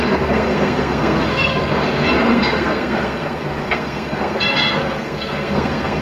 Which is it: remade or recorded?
remade